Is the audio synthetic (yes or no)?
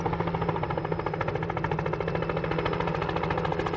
no